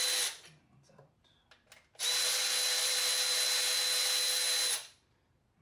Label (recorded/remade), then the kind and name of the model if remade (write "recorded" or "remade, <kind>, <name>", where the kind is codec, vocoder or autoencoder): recorded